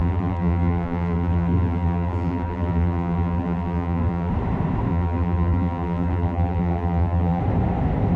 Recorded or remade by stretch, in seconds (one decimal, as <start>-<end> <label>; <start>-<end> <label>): 0.0-4.3 remade; 4.3-4.9 recorded; 4.9-7.4 remade; 7.4-8.2 recorded

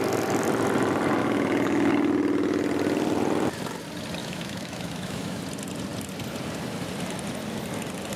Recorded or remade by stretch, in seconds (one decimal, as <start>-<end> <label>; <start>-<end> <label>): 0.0-1.2 recorded; 1.2-1.9 remade; 1.9-4.2 recorded; 4.2-5.4 remade; 5.4-8.2 recorded

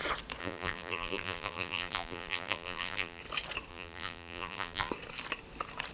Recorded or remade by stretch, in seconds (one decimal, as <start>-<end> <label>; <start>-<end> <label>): 0.0-0.4 recorded; 0.4-3.2 remade; 3.2-3.7 recorded; 3.7-4.9 remade; 4.9-5.9 recorded

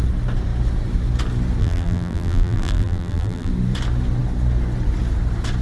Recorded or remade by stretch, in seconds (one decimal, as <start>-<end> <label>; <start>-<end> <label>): 0.0-1.6 recorded; 1.6-3.5 remade; 3.5-5.6 recorded